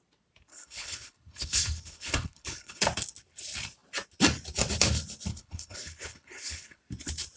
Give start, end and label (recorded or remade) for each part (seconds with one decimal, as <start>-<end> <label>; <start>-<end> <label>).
0.0-0.5 recorded; 0.5-2.8 remade; 2.8-5.3 recorded; 5.3-6.8 remade; 6.8-7.4 recorded